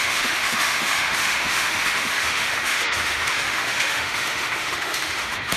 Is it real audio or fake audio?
fake